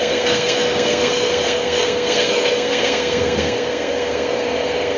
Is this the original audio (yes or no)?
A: no